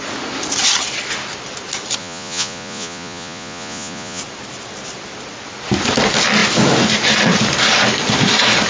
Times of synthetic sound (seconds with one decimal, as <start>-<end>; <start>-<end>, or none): 2.0-4.2

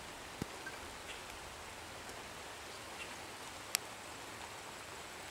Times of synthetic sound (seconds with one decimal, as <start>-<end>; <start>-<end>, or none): none

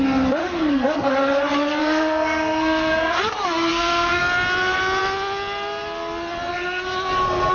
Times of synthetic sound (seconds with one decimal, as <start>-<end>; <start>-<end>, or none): 0.4-1.1; 1.8-3.2; 3.7-4.2

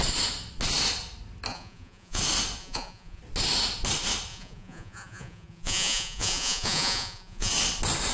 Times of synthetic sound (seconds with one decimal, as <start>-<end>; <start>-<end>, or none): 1.5-2.2; 2.6-3.2; 4.3-7.5